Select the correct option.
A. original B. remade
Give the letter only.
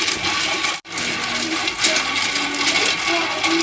A